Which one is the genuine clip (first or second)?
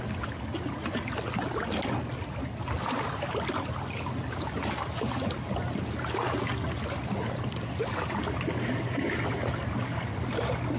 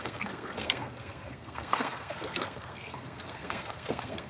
first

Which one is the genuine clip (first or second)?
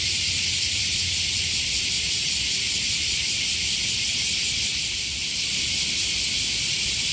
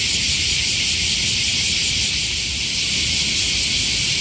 second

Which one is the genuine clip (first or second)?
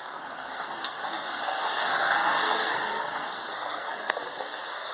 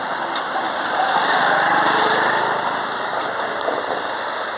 second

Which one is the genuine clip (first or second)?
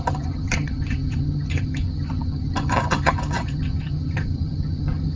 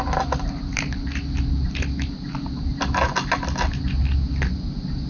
second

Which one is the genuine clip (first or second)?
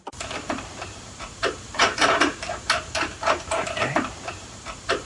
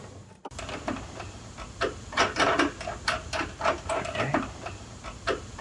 second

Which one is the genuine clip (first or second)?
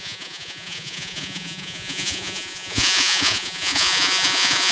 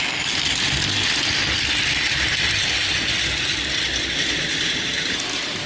second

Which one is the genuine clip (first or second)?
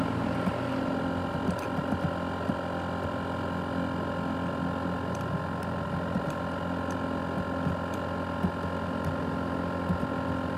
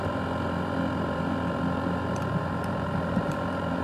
first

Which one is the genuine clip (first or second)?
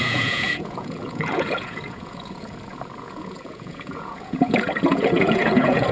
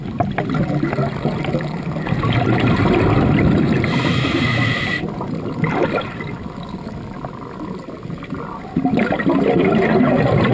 second